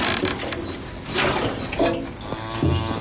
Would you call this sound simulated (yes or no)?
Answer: no